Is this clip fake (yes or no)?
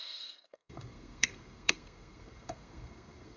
yes